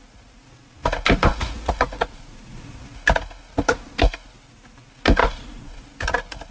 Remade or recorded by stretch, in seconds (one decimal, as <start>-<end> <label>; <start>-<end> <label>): 0.0-1.3 recorded; 1.3-2.8 remade; 2.8-5.2 recorded; 5.2-5.8 remade; 5.8-6.5 recorded